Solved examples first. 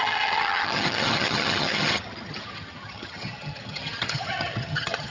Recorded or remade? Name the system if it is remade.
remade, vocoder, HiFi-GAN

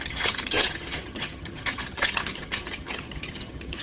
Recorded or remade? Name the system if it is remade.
remade, vocoder, HiFi-GAN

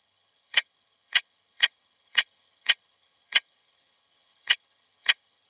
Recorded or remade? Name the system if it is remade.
remade, vocoder, HiFi-GAN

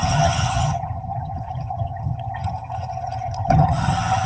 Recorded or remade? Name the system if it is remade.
remade, vocoder, HiFi-GAN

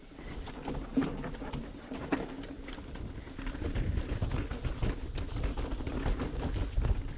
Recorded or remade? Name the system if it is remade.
recorded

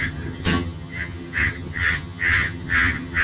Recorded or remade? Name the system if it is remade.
remade, vocoder, HiFi-GAN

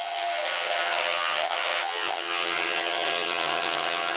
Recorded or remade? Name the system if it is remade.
remade, vocoder, HiFi-GAN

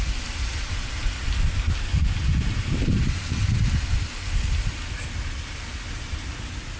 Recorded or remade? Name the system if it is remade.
recorded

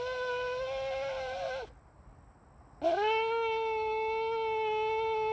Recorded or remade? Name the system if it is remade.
recorded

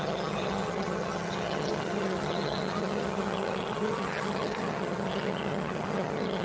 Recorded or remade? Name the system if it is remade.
remade, vocoder, HiFi-GAN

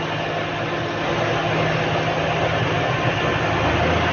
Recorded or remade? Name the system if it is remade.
recorded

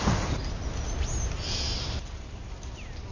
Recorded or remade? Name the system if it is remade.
recorded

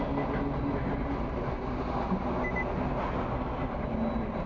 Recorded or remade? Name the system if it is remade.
recorded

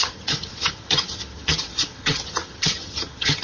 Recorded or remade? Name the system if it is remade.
remade, vocoder, HiFi-GAN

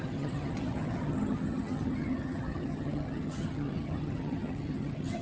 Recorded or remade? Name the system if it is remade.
remade, vocoder, HiFi-GAN